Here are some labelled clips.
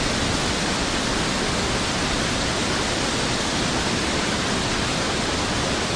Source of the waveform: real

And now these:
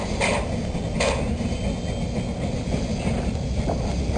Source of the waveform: real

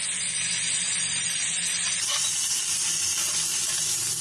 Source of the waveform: real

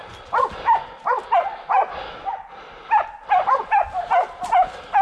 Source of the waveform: real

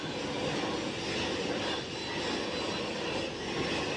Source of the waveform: real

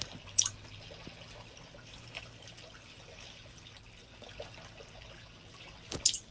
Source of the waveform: real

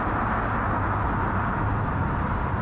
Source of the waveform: real